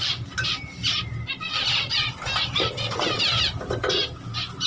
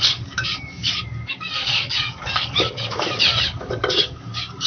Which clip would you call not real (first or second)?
second